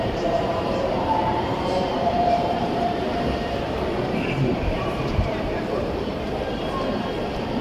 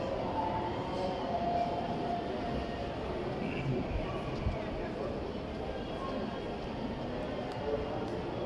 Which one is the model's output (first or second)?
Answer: first